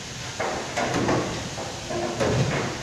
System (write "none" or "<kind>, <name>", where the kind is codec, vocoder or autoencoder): none